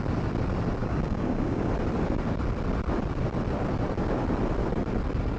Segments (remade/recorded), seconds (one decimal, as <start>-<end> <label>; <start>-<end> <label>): 0.0-0.8 recorded; 0.8-1.7 remade; 1.7-5.4 recorded